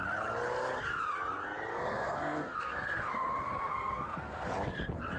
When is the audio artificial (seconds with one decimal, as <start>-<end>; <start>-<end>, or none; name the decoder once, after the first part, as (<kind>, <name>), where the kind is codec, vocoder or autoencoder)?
1.7-3.1 (codec, SNAC); 3.7-4.5